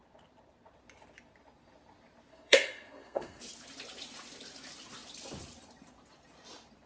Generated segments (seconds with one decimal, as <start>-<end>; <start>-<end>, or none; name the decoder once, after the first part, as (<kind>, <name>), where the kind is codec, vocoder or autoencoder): 2.3-3.4 (codec, SNAC)